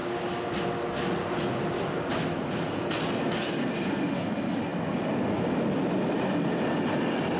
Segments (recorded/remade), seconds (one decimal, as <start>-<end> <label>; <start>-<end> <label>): 0.0-7.4 recorded